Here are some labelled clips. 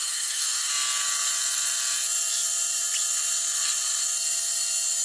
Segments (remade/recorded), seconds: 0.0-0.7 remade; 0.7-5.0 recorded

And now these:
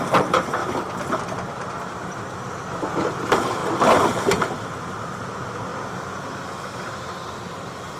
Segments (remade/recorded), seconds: 0.0-0.6 remade; 0.6-2.2 recorded; 2.2-5.7 remade; 5.7-7.3 recorded; 7.3-8.0 remade

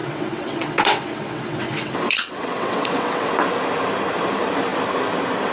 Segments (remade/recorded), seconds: 0.0-3.3 remade; 3.3-5.5 recorded

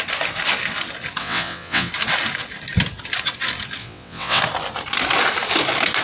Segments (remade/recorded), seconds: 0.0-1.2 recorded; 1.2-1.9 remade; 1.9-3.8 recorded; 3.8-4.4 remade; 4.4-6.0 recorded